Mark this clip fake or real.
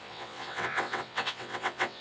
fake